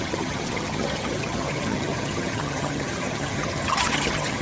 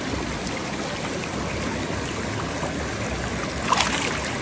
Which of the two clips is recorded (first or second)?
second